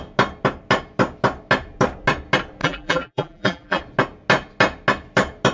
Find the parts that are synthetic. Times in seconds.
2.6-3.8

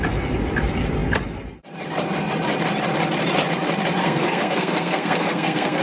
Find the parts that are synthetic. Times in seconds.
4.0-5.8

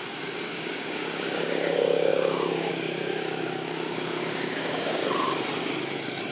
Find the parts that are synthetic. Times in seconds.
0.0-5.0

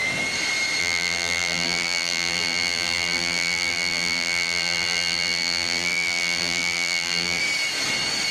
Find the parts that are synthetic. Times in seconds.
0.8-7.4